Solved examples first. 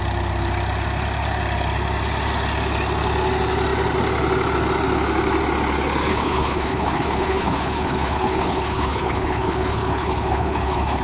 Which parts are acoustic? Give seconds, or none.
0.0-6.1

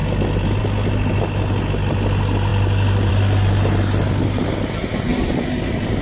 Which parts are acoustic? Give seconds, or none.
0.0-2.5; 3.1-5.1